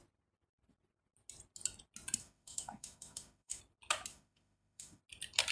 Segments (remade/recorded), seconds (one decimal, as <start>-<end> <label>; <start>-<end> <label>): 0.0-2.2 recorded; 2.2-3.6 remade; 3.6-4.1 recorded; 4.1-5.0 remade; 5.0-5.5 recorded